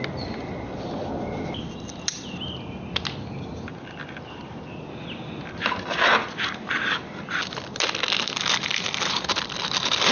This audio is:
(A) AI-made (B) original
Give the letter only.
B